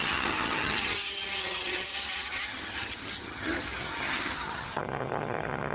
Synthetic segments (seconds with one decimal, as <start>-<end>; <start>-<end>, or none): 0.0-5.7